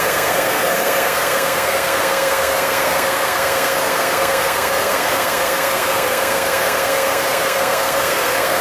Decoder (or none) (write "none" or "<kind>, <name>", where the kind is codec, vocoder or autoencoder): codec, SNAC